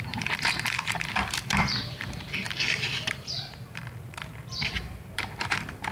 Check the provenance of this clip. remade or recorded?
remade